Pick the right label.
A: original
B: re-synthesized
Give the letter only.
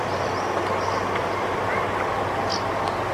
A